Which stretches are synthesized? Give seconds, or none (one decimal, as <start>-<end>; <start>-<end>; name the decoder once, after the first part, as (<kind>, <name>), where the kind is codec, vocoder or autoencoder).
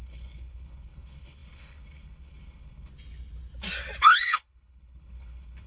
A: 0.0-2.9 (codec, HILCodec); 4.0-5.7